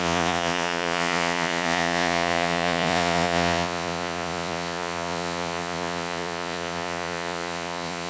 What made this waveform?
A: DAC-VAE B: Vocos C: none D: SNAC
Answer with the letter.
B